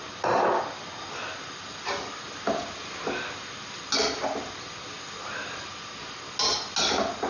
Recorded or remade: recorded